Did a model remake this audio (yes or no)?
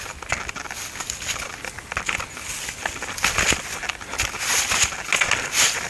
no